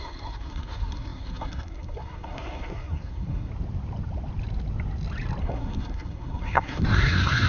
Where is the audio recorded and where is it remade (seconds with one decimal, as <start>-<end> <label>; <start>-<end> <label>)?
0.0-3.5 remade; 3.5-5.4 recorded; 5.4-7.5 remade